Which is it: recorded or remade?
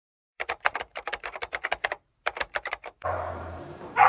remade